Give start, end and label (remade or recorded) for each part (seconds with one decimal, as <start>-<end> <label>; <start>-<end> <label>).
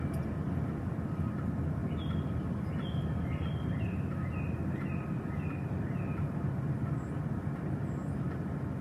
0.0-8.8 recorded